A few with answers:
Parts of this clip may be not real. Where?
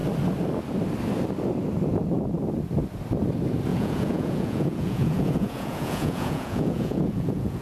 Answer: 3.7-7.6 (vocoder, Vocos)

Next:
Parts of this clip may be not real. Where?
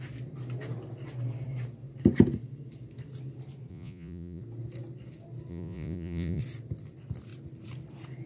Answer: 3.7-4.4 (vocoder, Vocos); 5.5-6.4